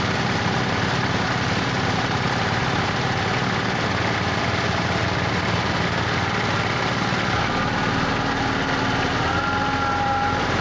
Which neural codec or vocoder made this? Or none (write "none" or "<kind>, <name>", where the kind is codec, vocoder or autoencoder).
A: none